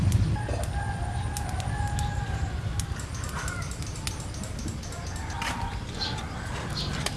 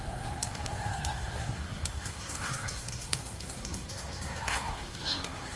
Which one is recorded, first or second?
first